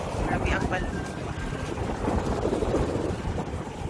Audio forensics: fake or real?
fake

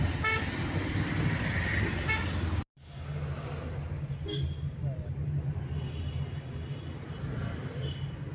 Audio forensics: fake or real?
real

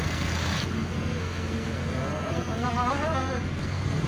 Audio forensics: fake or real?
fake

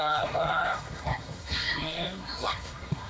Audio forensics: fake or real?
fake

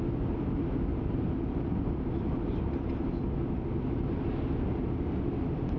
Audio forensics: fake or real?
real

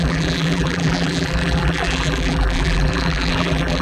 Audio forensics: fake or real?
fake